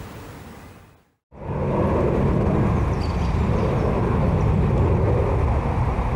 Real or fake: real